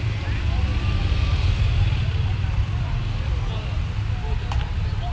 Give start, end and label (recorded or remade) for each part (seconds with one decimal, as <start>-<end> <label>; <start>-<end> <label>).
0.0-5.1 recorded